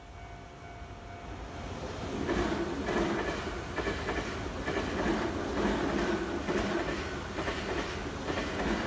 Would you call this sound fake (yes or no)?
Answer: no